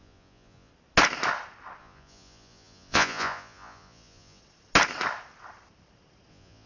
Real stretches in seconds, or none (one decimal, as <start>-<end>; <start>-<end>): 0.7-1.8; 4.4-6.3